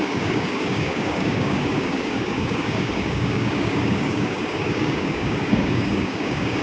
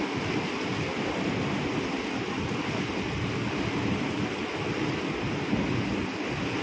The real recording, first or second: second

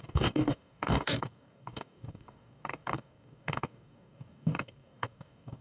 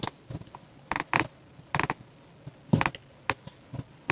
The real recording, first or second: second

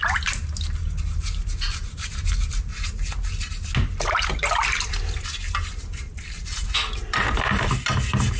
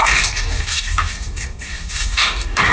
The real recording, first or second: first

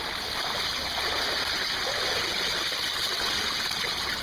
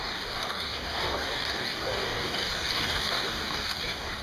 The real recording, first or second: first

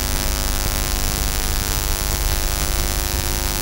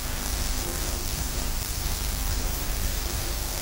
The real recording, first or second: first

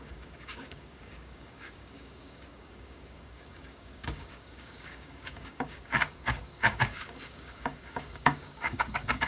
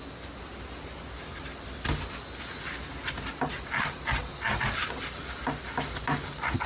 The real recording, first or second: second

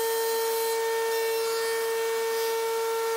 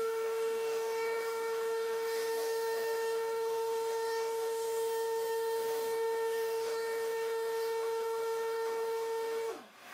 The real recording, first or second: first